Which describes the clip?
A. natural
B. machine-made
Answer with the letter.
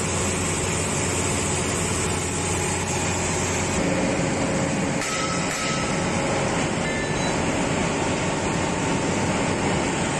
A